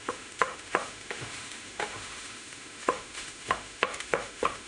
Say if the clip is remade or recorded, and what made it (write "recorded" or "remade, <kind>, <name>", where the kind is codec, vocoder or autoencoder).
remade, autoencoder, DAC-VAE